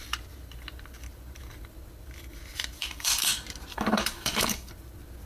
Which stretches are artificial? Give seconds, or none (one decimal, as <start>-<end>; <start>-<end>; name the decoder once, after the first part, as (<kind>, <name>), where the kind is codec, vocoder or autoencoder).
2.8-3.3 (codec, DAC); 3.7-4.7